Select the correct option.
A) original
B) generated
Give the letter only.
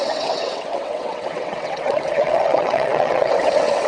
B